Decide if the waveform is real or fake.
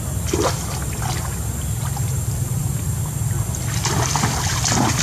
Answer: real